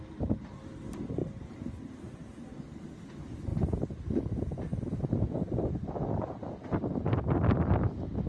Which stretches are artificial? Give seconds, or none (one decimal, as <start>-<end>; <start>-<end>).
none